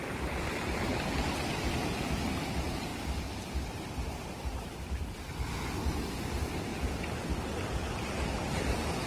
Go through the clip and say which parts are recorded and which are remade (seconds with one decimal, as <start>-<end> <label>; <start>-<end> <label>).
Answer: 0.0-0.9 remade; 0.9-2.4 recorded; 2.4-6.7 remade; 6.7-7.4 recorded; 7.4-9.1 remade